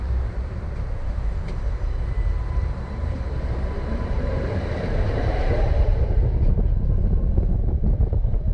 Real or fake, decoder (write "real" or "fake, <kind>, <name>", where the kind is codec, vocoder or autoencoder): fake, vocoder, BigVGAN v2